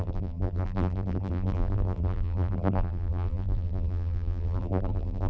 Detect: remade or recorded remade